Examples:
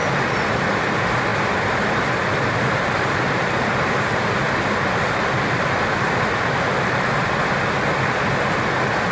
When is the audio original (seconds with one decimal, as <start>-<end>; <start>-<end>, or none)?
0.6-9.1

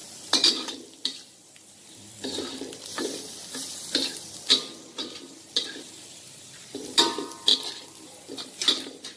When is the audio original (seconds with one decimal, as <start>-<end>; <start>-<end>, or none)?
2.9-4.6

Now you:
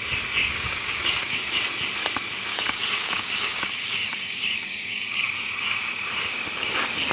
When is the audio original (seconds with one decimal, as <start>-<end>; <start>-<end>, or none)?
0.0-0.4; 1.4-2.5; 5.3-7.1